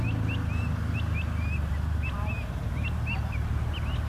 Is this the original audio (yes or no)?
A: yes